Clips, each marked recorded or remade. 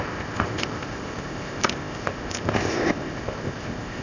remade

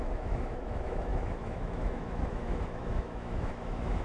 remade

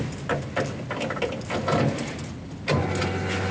recorded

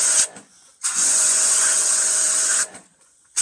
remade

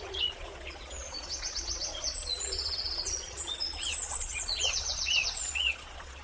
remade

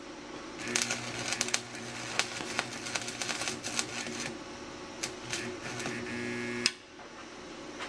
recorded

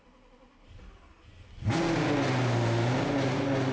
recorded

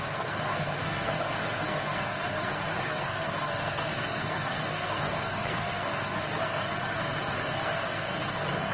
remade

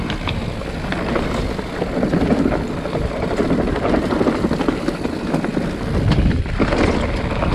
recorded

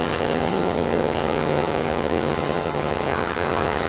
remade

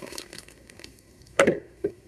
remade